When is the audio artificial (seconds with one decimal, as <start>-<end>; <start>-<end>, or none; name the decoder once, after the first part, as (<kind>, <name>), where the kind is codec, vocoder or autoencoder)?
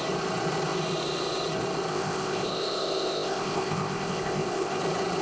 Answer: 1.9-4.8 (codec, ZipCodec)